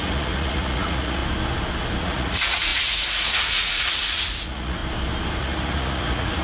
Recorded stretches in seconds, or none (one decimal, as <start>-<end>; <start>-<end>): 1.2-2.0; 4.8-5.4